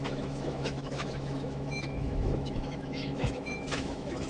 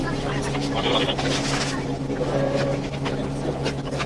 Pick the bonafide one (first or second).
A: second